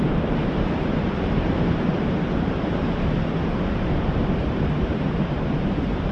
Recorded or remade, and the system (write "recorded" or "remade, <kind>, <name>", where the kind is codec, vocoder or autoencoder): remade, vocoder, BigVGAN v2